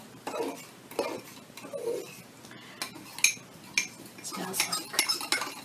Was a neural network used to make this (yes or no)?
no